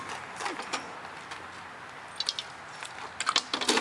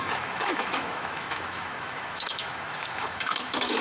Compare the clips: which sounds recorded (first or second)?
first